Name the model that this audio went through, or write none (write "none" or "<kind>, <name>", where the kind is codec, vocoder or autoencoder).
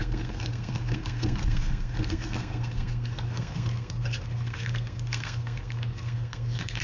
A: codec, SNAC